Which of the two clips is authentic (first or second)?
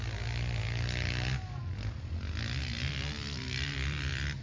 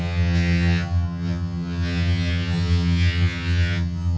first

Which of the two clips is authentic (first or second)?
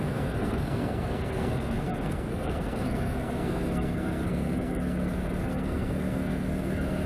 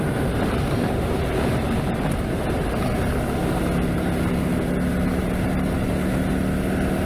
second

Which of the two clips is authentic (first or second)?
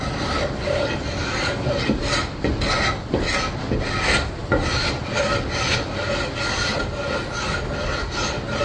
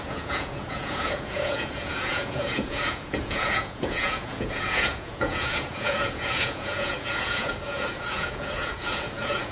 first